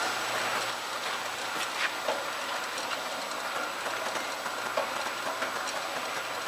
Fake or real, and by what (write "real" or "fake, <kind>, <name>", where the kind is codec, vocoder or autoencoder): real